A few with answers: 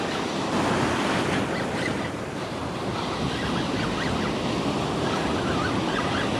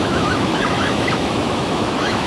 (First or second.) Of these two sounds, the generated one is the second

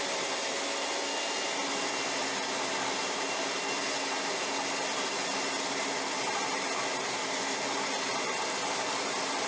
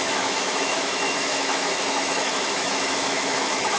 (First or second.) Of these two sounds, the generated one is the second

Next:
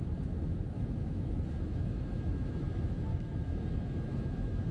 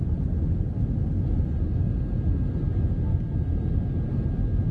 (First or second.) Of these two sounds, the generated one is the first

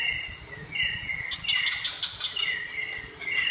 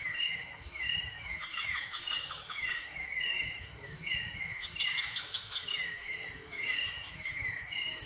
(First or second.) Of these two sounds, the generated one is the second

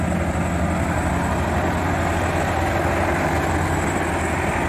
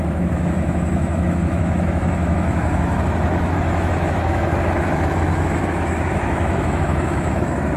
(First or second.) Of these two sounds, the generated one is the second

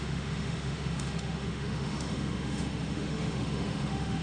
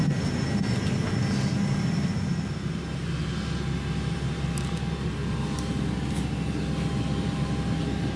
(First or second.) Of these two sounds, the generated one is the first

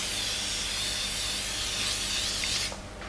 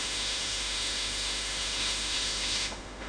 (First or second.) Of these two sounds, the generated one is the second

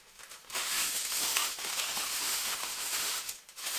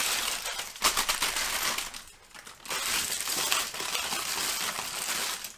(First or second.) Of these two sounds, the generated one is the first